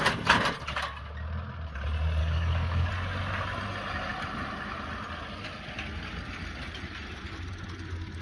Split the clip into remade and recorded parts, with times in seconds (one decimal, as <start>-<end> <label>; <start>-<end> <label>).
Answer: 0.0-2.2 recorded; 2.2-2.9 remade; 2.9-8.2 recorded